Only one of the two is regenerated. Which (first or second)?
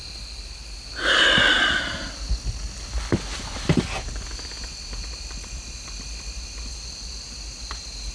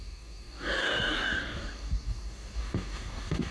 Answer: second